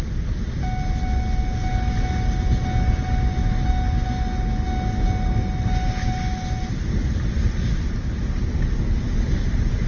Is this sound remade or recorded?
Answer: recorded